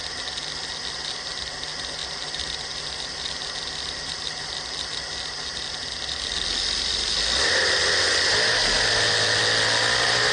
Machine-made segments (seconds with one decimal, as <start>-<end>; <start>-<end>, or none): 7.8-8.3